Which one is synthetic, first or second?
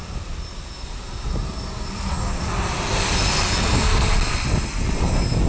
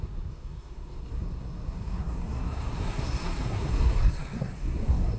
second